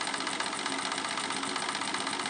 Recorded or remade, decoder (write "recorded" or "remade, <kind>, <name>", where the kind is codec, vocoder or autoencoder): recorded